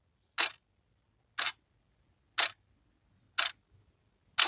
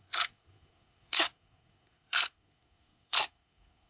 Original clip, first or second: first